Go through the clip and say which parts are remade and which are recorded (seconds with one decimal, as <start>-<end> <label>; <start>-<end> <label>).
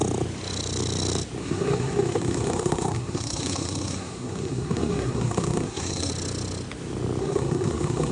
0.0-1.4 recorded; 1.4-6.1 remade; 6.1-7.2 recorded; 7.2-8.1 remade